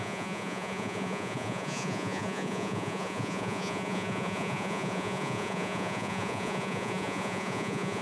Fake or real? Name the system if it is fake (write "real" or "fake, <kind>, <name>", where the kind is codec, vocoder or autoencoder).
fake, vocoder, Vocos